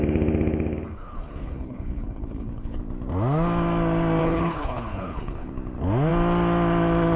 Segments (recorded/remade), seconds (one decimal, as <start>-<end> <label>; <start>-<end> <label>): 0.0-0.9 recorded; 0.9-2.8 remade; 2.8-4.2 recorded; 4.2-5.5 remade; 5.5-7.2 recorded